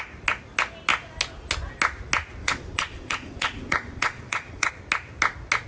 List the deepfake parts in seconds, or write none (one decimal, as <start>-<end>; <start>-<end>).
2.4-4.7